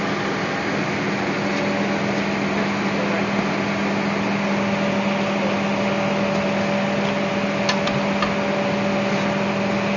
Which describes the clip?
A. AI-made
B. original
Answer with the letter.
B